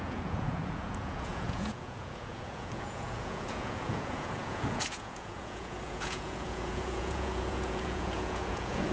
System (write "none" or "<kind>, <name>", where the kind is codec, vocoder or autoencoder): vocoder, Vocos